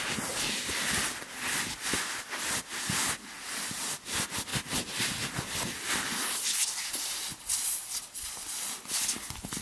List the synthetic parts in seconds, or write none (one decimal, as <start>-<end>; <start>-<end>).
none